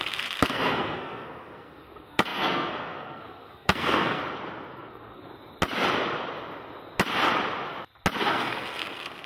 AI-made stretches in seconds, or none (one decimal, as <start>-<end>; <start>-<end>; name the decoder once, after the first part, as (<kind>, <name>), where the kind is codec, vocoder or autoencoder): 0.0-4.2 (codec, SNAC); 4.7-5.3; 8.2-9.3